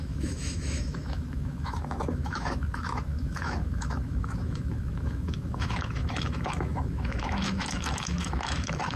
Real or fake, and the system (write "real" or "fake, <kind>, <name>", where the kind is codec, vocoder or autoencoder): fake, autoencoder, DAC-VAE